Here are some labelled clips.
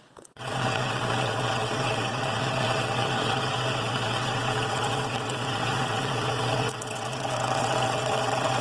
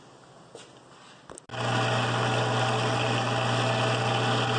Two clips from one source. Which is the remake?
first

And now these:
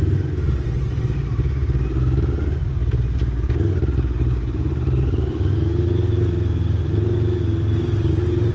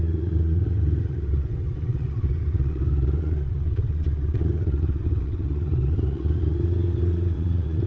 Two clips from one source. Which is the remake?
second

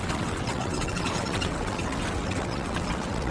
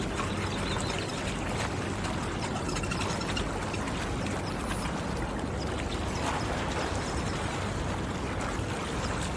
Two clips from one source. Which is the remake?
first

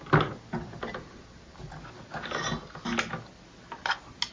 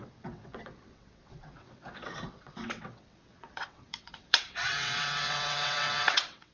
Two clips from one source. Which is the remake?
second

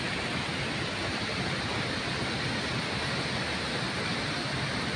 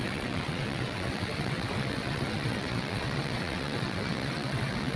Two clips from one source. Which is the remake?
second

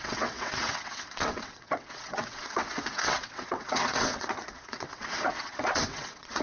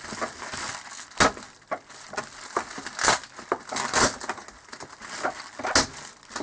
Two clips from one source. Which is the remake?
first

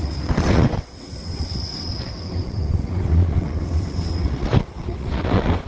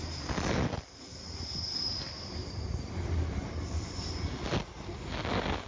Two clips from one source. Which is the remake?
first